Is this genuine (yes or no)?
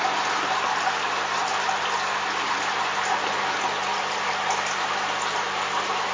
yes